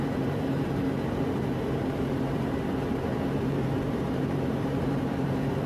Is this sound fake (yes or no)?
yes